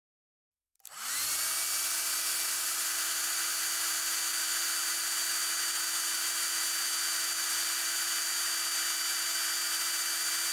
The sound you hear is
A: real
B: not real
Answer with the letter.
A